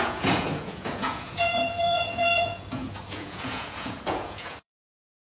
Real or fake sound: fake